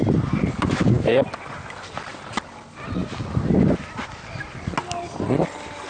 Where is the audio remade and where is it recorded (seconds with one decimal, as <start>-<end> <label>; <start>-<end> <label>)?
0.0-5.9 recorded